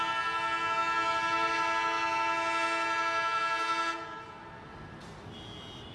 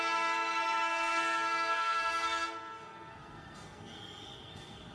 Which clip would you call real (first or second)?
first